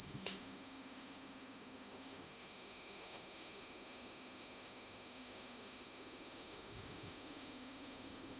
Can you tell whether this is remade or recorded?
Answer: remade